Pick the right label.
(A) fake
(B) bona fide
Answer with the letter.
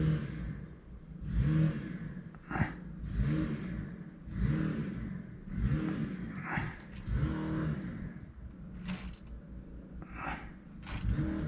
B